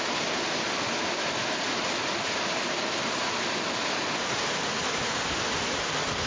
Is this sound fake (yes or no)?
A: no